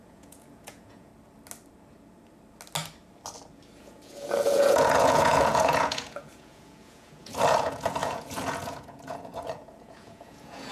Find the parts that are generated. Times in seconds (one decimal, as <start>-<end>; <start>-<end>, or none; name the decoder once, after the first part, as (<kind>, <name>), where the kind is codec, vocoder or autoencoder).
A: 0.0-1.1 (vocoder, Vocos); 3.8-10.7